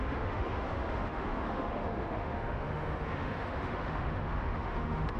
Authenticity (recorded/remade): remade